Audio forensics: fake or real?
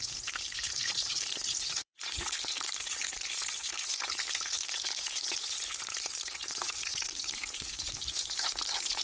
fake